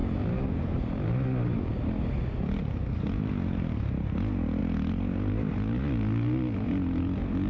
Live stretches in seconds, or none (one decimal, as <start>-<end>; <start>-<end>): 0.0-7.5